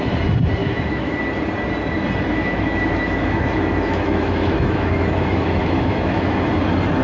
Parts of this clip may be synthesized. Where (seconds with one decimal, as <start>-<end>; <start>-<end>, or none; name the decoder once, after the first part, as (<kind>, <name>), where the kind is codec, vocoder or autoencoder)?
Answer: 0.6-1.2 (autoencoder, DAC-VAE); 2.3-6.5